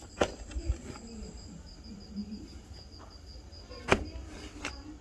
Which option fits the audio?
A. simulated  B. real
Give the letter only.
B